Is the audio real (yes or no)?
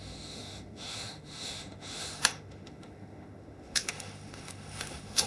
no